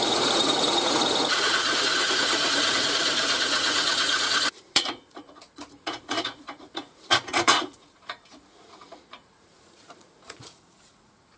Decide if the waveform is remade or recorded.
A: remade